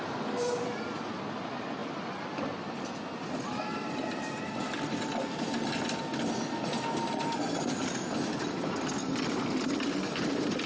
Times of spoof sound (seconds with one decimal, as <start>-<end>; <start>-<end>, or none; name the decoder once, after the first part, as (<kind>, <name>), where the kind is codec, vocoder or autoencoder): none